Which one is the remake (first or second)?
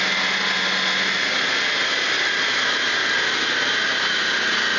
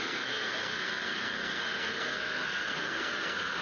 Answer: second